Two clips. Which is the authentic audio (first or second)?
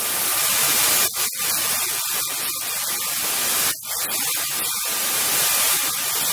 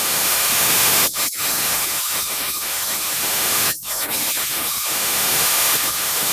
first